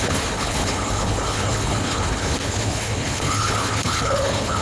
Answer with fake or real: fake